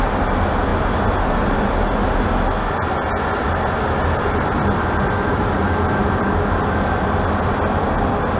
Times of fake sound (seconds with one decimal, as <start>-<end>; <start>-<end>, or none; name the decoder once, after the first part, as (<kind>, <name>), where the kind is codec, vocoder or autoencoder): none